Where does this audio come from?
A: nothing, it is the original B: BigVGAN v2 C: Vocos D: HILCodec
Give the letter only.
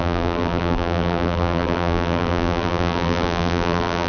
B